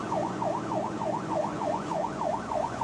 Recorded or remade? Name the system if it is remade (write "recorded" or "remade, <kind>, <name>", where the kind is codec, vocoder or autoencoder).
remade, vocoder, Vocos